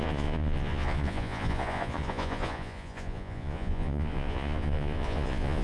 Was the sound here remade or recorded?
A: remade